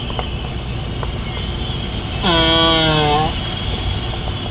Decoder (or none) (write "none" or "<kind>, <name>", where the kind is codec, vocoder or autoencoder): none